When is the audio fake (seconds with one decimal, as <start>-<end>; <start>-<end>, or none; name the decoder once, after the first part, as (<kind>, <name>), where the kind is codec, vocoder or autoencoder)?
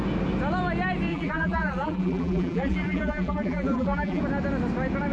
1.1-4.2 (vocoder, BigVGAN v2)